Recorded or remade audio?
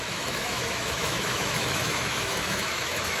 remade